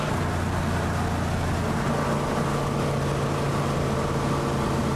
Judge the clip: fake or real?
real